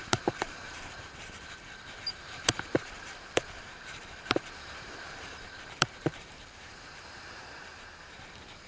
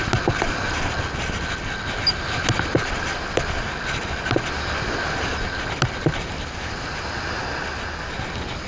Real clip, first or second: second